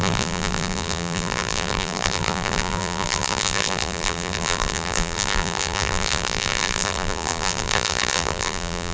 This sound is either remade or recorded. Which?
remade